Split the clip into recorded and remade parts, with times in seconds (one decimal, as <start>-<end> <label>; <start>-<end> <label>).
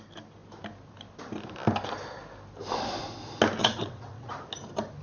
0.0-3.6 recorded; 3.6-4.3 remade; 4.3-5.0 recorded